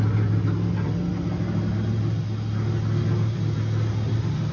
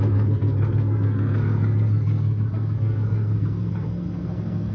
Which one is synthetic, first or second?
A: second